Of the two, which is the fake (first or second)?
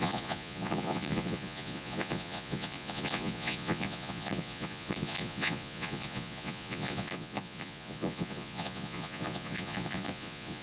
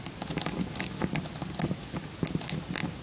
first